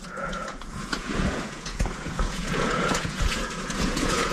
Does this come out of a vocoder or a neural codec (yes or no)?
yes